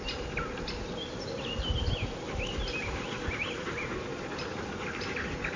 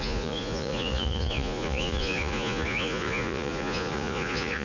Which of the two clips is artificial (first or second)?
second